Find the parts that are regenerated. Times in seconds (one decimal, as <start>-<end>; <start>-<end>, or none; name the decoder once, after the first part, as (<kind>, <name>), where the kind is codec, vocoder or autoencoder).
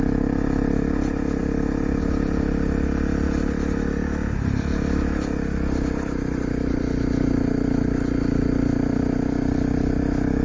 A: none